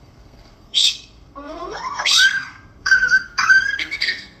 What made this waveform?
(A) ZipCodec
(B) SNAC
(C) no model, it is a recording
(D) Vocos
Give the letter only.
B